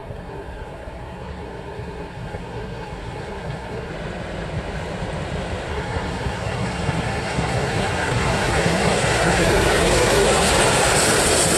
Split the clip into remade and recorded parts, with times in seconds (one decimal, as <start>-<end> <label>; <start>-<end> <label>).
0.0-3.9 remade; 3.9-5.7 recorded; 5.7-10.5 remade; 10.5-11.6 recorded